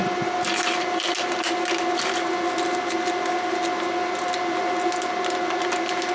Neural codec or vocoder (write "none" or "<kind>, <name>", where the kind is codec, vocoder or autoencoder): none